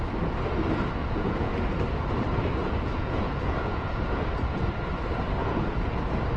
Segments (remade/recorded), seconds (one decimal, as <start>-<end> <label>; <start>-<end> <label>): 0.0-1.0 recorded; 1.0-1.5 remade; 1.5-2.6 recorded; 2.6-4.2 remade; 4.2-5.4 recorded; 5.4-6.0 remade; 6.0-6.4 recorded